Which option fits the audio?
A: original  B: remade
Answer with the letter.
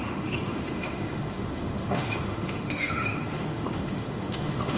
B